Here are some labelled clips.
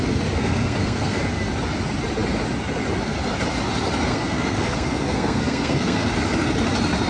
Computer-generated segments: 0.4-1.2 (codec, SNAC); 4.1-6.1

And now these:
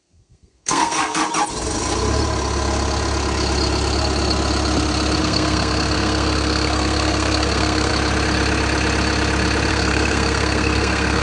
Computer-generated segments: 0.0-1.2 (codec, SNAC); 5.2-7.9; 9.7-11.2

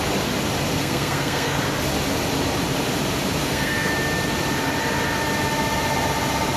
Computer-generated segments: 0.8-1.6 (codec, SNAC); 3.4-3.9

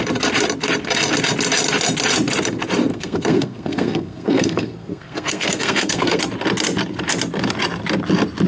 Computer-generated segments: 2.9-6.2 (codec, SNAC)

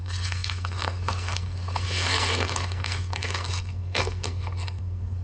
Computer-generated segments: 0.0-5.2 (codec, SNAC)

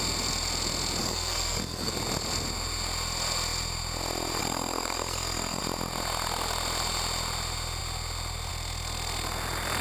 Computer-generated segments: 1.0-1.9 (codec, SNAC); 4.4-5.6